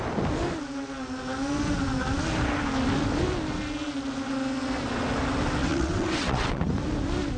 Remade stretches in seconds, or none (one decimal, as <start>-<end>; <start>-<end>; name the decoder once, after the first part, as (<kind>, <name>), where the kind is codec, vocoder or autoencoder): 5.6-6.6 (vocoder, WaveNeXt)